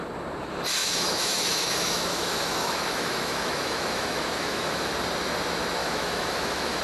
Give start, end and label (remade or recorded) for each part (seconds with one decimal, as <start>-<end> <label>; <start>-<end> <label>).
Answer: 0.0-0.8 recorded; 0.8-4.9 remade; 4.9-5.8 recorded; 5.8-6.8 remade